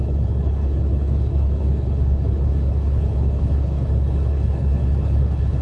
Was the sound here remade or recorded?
remade